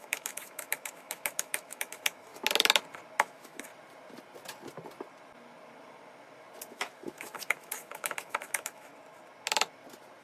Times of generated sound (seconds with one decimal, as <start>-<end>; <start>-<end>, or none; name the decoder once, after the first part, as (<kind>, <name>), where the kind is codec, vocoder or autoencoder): 0.0-2.3 (autoencoder, DAC-VAE); 3.2-3.7; 6.7-8.9